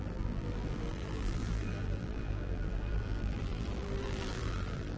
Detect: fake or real fake